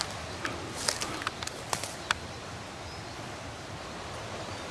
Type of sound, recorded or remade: recorded